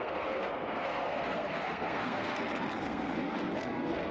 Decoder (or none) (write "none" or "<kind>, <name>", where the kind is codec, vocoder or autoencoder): codec, SNAC